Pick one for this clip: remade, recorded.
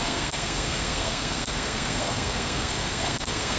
remade